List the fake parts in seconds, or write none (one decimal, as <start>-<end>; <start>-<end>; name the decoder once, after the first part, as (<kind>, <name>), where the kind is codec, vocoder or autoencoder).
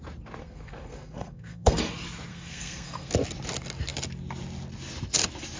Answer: 0.4-1.8 (codec, SNAC); 2.3-3.1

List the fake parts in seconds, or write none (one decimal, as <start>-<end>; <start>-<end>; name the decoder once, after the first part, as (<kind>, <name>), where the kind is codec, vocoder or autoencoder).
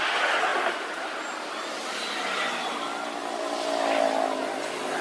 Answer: none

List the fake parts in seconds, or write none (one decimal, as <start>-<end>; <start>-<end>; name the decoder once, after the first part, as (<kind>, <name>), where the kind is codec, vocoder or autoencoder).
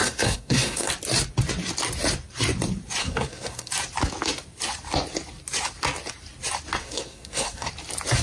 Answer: 0.0-0.9 (codec, SNAC); 3.0-3.7; 6.8-7.7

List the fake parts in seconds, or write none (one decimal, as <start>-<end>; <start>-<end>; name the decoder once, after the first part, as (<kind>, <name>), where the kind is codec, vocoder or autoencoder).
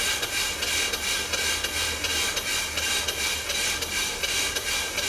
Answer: none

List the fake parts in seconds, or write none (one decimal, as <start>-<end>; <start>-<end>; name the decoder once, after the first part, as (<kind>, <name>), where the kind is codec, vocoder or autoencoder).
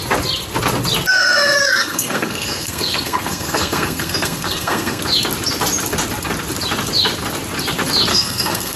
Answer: 1.1-5.0 (codec, SNAC); 8.1-8.8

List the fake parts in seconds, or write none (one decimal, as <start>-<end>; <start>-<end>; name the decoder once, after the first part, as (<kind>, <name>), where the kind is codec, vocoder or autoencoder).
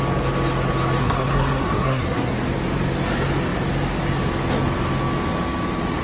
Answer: 1.0-2.3 (codec, SNAC)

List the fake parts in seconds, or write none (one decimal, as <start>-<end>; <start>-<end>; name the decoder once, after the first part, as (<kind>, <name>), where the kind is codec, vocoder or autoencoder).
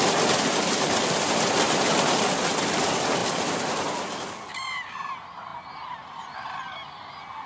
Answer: none